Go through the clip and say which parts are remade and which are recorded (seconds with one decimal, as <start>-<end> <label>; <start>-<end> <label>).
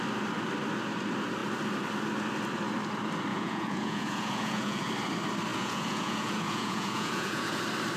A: 0.0-3.3 recorded; 3.3-4.9 remade; 4.9-5.5 recorded; 5.5-7.6 remade; 7.6-8.0 recorded